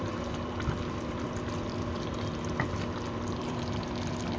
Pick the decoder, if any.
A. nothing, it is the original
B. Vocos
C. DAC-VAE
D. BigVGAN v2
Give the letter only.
D